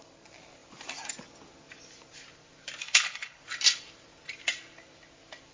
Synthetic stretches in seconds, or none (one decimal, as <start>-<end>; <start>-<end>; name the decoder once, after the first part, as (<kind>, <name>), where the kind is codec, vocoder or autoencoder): 2.8-3.4 (codec, HILCodec)